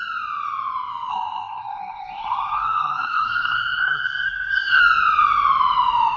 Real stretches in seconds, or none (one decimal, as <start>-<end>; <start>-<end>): 0.0-1.1; 4.8-6.2